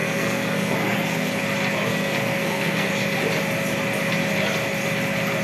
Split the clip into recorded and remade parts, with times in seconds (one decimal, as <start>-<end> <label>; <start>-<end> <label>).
0.0-1.4 remade; 1.4-1.9 recorded; 1.9-2.9 remade; 2.9-5.4 recorded